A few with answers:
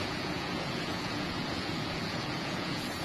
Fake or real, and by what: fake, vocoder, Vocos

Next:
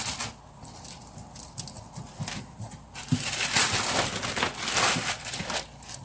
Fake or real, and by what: real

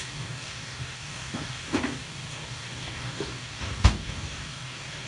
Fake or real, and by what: fake, codec, DAC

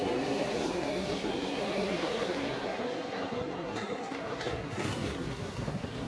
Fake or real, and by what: fake, codec, SNAC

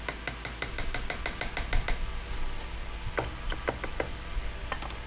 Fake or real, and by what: real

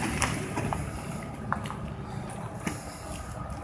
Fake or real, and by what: real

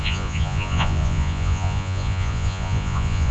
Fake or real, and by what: fake, vocoder, Vocos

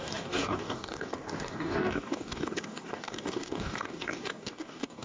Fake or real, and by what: fake, codec, DAC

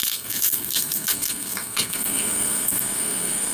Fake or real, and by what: fake, codec, SNAC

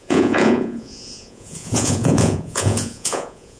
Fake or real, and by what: fake, vocoder, Vocos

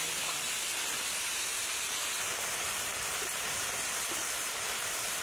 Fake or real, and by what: fake, vocoder, BigVGAN v2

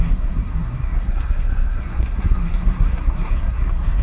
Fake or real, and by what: fake, codec, SNAC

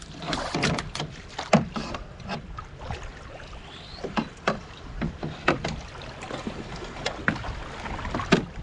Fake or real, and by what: real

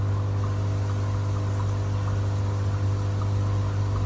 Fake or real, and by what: real